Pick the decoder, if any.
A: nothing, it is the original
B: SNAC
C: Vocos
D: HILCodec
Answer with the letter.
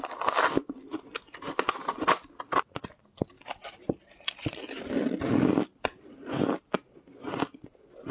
A